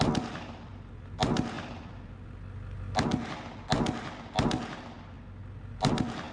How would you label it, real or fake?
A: real